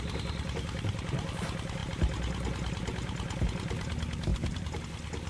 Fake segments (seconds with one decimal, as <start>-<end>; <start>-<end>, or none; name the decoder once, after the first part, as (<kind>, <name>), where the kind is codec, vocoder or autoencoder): 4.3-4.8 (vocoder, BigVGAN v2)